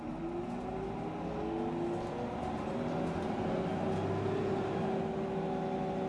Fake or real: real